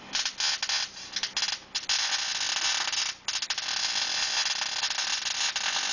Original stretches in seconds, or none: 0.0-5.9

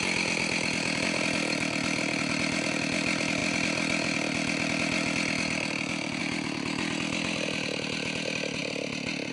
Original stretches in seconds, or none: 0.0-9.3